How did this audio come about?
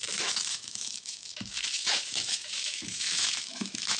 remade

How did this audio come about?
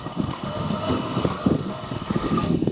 remade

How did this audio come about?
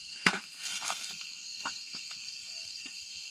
remade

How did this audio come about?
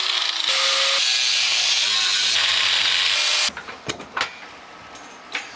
recorded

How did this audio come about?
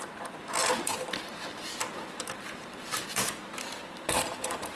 remade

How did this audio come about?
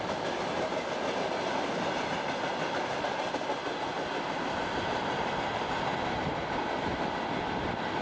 recorded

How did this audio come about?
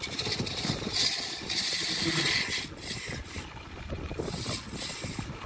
recorded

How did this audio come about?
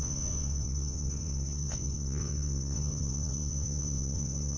remade